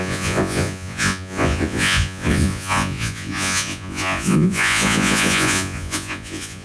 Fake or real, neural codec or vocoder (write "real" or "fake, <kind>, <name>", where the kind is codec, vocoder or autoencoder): fake, vocoder, Vocos